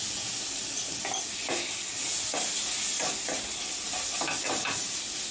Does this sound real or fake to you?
real